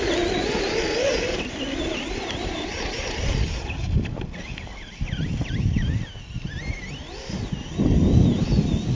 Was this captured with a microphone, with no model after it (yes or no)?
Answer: yes